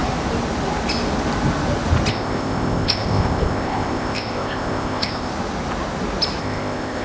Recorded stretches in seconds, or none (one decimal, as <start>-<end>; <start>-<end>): 0.0-2.1; 5.3-6.4